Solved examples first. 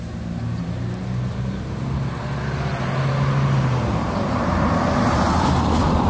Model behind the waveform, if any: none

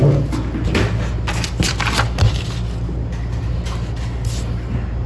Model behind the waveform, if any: none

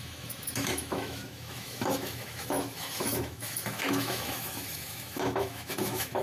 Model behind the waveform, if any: autoencoder, DAC-VAE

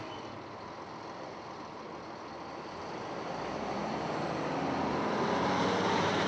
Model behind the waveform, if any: vocoder, BigVGAN v2